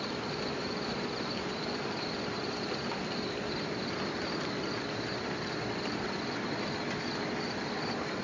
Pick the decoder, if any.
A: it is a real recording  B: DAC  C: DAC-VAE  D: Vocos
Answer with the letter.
A